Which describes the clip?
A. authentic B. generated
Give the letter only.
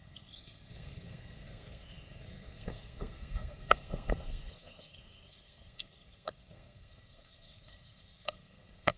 B